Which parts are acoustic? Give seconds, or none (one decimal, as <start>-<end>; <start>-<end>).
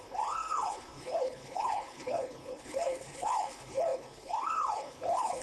none